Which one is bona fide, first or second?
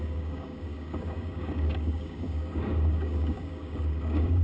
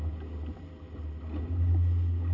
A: second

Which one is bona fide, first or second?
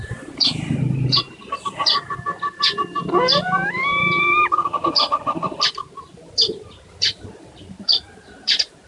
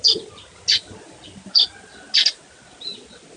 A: second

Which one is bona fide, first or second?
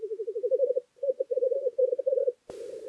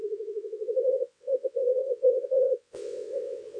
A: first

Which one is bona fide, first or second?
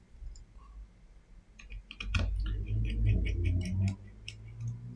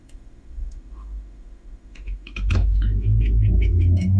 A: first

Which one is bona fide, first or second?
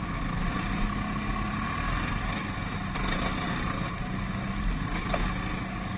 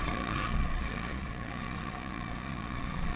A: first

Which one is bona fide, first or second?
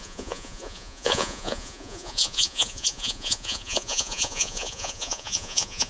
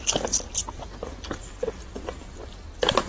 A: second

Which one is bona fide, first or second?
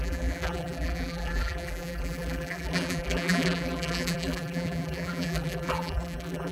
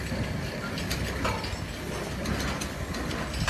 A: second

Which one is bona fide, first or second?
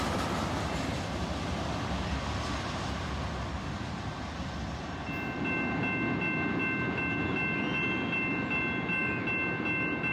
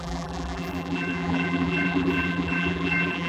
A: first